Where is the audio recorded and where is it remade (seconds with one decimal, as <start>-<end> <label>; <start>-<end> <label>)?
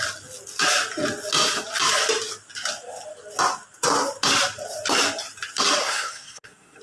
0.0-5.8 recorded; 5.8-6.8 remade